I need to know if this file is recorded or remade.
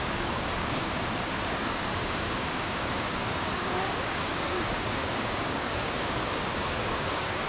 remade